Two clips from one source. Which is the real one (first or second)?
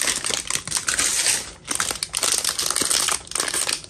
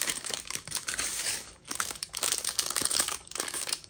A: first